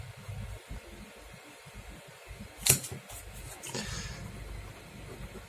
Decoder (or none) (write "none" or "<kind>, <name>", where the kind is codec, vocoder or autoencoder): none